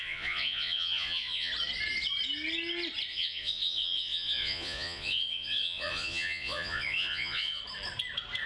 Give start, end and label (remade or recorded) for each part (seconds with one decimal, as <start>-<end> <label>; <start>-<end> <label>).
0.0-1.5 remade; 1.5-3.1 recorded; 3.1-7.6 remade; 7.6-8.5 recorded